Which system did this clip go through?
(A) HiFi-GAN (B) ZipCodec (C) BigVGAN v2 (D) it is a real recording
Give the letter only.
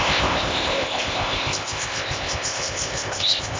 B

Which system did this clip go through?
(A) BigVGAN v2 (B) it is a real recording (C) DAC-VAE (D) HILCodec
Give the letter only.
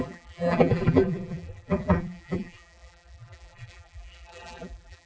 A